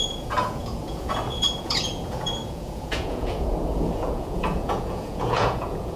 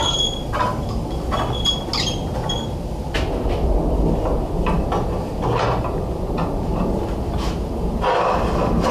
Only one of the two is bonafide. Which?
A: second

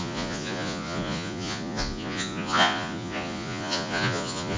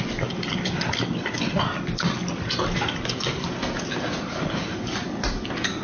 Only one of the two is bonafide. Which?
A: second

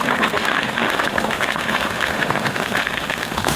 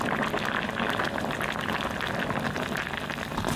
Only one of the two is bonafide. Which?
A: second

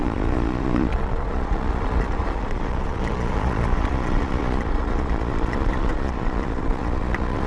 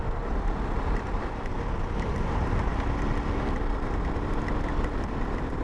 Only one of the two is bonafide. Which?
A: second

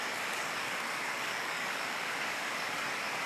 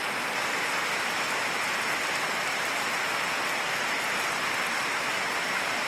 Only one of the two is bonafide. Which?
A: second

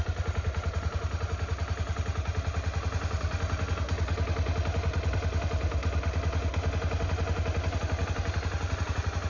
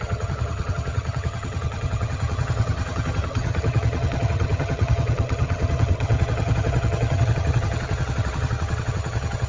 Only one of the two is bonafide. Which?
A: first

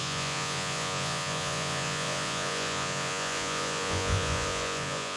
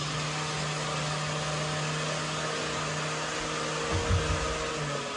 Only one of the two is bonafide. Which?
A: second